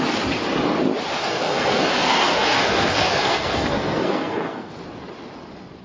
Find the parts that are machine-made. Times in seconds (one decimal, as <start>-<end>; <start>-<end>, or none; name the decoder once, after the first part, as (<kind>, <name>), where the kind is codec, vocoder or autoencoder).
1.2-4.7 (codec, SNAC)